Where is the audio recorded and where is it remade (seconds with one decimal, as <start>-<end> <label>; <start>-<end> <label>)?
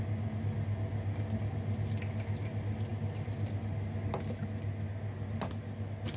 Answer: 0.0-6.2 recorded